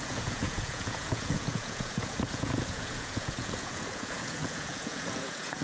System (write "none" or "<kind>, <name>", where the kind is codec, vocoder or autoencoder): vocoder, Vocos